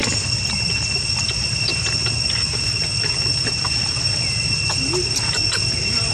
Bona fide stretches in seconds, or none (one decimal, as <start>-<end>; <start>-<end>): 0.0-6.1